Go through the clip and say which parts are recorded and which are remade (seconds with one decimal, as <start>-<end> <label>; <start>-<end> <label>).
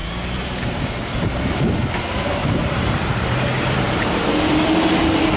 0.0-1.0 recorded; 1.0-1.8 remade; 1.8-2.4 recorded; 2.4-4.3 remade; 4.3-5.4 recorded